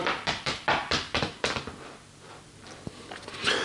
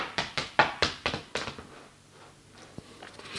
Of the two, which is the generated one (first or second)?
first